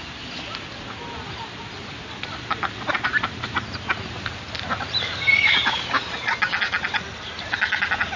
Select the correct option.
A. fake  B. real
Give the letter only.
B